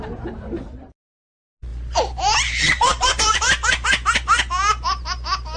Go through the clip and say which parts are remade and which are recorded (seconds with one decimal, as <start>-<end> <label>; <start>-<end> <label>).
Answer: 0.0-1.7 recorded; 1.7-3.4 remade; 3.4-5.6 recorded

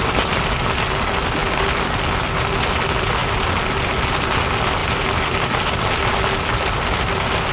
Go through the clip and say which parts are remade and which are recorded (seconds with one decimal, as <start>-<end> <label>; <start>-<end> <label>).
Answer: 0.0-3.2 recorded; 3.2-3.7 remade; 3.7-4.8 recorded; 4.8-6.3 remade; 6.3-7.5 recorded